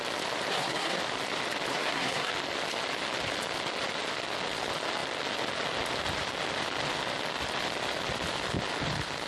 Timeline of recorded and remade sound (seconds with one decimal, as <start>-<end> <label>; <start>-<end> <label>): 0.0-0.5 recorded; 0.5-1.0 remade; 1.0-1.7 recorded; 1.7-2.3 remade; 2.3-9.3 recorded